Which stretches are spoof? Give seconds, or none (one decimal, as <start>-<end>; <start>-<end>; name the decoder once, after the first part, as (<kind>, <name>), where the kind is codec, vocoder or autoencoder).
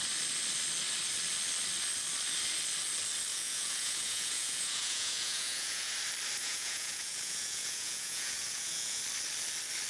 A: 3.3-5.9 (vocoder, Vocos); 6.4-9.0